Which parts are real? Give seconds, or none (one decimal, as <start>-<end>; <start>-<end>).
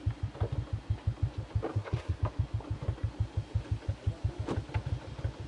0.0-1.7; 2.2-5.5